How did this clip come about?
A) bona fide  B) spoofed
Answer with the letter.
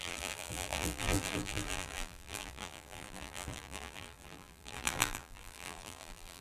B